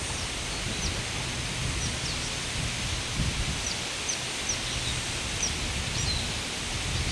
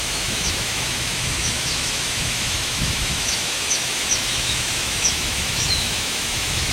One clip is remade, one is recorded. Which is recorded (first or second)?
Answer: first